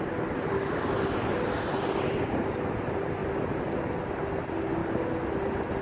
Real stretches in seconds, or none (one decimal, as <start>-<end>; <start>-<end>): 0.0-5.8

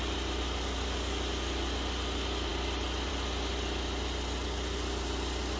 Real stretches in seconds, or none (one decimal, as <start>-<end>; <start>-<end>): 0.0-5.6

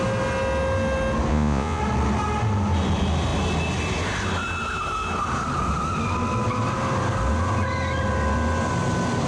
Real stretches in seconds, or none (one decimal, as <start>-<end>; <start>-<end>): 0.0-1.3; 1.8-9.3

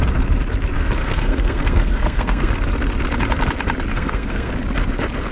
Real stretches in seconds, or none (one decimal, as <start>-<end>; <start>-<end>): 0.0-1.0; 2.5-3.9; 4.5-5.3

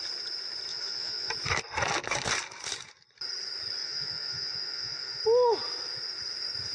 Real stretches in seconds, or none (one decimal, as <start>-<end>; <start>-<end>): 0.0-0.7; 1.3-3.8; 5.2-6.7

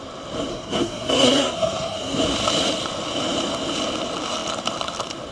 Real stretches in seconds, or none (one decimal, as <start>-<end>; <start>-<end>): 0.0-0.5; 2.2-5.3